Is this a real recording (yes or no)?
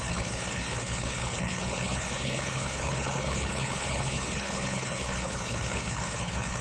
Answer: no